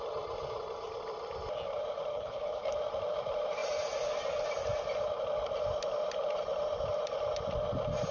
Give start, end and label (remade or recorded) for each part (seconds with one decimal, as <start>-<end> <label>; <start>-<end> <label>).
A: 0.0-2.1 recorded; 2.1-2.7 remade; 2.7-8.1 recorded